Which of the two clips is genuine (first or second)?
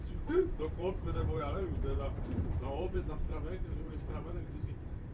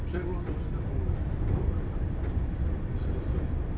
second